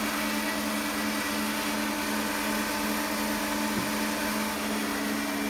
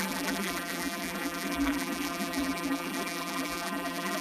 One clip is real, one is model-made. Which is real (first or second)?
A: first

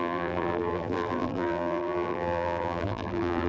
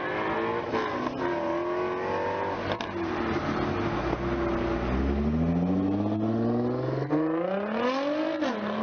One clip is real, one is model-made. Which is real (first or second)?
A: second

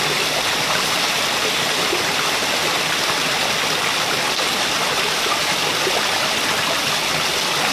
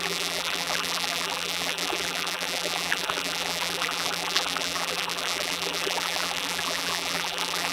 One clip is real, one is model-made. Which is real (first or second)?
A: first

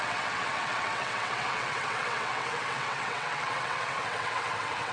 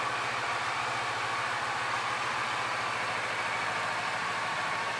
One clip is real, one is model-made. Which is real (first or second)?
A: second